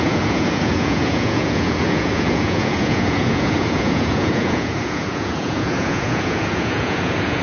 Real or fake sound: fake